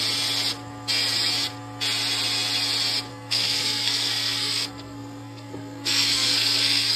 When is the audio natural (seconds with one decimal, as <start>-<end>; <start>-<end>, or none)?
0.0-3.1